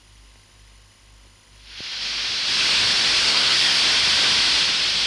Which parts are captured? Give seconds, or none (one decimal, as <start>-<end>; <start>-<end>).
0.0-3.2; 3.8-5.1